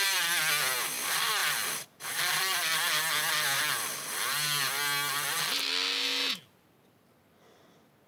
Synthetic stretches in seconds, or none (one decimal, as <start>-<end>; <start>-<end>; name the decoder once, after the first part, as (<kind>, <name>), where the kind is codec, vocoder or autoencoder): none